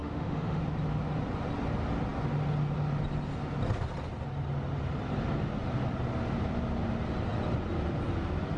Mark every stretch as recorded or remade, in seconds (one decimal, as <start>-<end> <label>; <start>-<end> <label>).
0.0-0.6 remade; 0.6-8.6 recorded